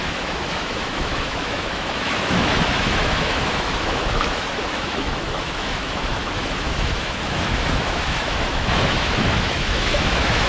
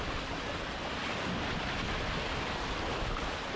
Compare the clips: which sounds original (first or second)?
second